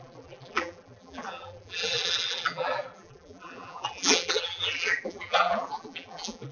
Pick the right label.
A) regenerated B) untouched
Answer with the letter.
A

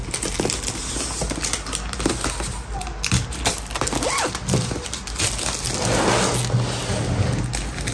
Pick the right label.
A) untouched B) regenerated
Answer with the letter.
A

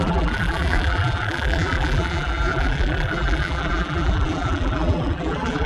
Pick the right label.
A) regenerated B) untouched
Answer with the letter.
A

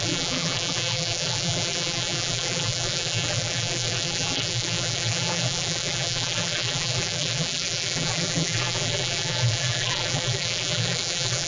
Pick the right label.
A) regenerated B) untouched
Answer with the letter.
A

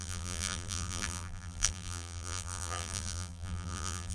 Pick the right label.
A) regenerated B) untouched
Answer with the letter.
A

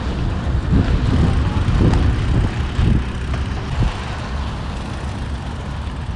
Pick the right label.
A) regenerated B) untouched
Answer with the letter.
B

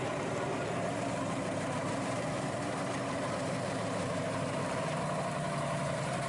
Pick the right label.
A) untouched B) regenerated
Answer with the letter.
B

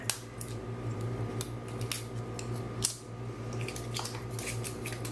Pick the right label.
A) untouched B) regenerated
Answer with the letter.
A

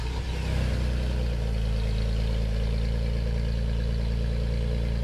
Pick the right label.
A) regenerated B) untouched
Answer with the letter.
B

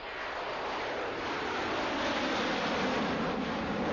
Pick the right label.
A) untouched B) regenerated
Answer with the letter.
B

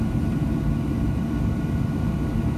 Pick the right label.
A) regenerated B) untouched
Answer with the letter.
A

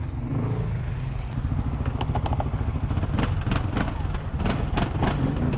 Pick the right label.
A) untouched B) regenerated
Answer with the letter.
A